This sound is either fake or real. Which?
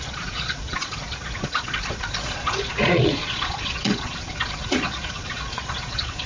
fake